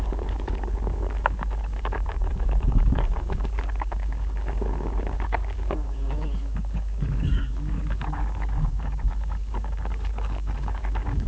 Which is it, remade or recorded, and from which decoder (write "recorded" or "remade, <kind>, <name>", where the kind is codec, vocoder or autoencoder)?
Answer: remade, codec, DAC